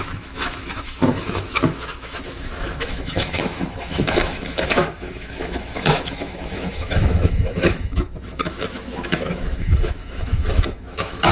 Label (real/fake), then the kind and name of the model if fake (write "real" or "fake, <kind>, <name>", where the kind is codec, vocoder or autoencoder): fake, autoencoder, DAC-VAE